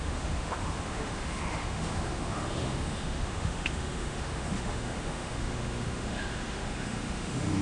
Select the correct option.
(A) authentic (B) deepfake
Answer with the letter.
B